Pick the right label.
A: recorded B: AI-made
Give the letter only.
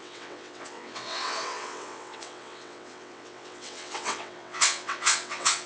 B